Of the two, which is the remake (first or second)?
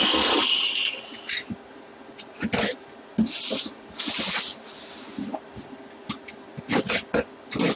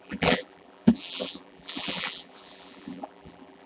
second